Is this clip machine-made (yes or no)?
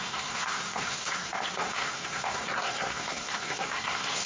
yes